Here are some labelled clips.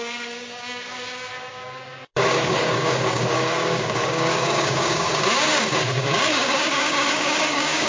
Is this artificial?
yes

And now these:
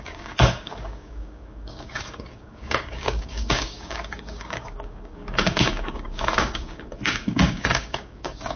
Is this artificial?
yes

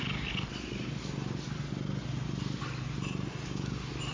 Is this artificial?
no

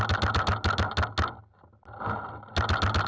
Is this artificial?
no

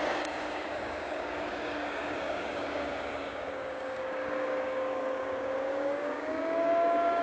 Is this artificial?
yes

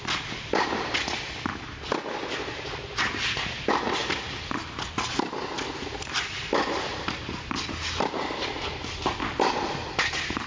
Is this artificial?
no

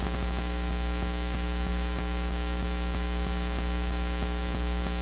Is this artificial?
yes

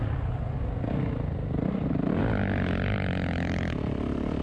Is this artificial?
no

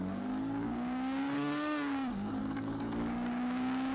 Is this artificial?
yes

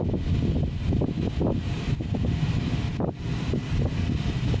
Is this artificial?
no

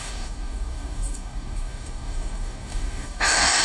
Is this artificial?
yes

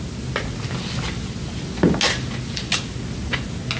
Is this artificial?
no